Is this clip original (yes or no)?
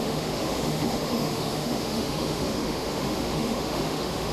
no